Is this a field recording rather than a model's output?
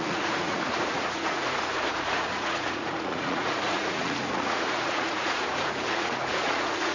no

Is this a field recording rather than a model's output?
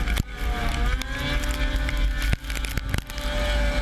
yes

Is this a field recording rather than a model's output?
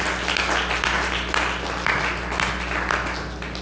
yes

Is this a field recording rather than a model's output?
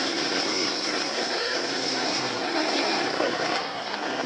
no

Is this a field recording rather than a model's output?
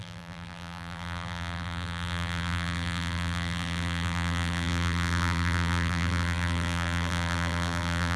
no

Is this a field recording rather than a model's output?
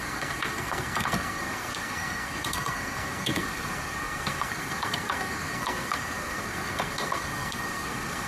no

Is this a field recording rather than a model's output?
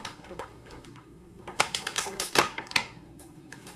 no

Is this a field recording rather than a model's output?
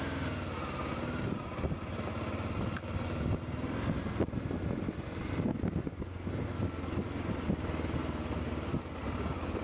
yes